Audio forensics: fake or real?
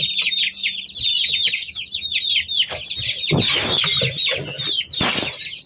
real